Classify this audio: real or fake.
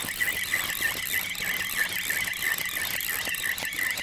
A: real